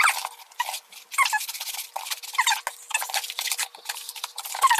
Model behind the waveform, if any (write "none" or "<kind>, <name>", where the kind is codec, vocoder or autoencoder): none